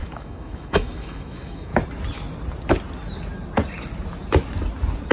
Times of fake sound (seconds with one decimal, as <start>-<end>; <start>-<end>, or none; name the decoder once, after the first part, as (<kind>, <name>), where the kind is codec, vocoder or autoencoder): 0.0-1.7 (autoencoder, DAC-VAE)